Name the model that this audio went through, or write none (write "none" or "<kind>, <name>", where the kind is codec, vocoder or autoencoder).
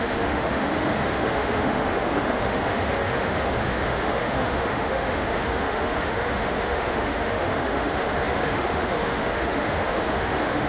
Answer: autoencoder, DAC-VAE